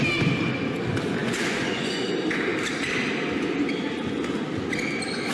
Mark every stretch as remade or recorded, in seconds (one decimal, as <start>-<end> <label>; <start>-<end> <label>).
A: 0.0-1.2 recorded; 1.2-2.1 remade; 2.1-5.3 recorded